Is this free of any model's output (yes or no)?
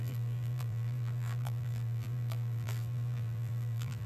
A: no